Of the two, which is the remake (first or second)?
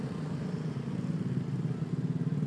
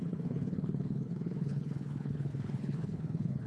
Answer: second